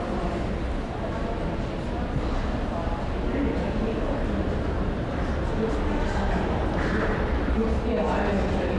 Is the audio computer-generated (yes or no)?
no